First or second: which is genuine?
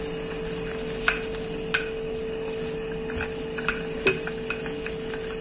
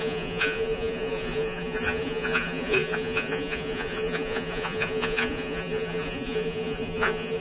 first